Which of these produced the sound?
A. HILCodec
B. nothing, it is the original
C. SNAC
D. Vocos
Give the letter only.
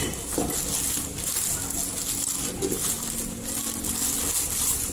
B